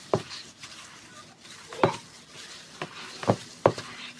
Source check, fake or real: fake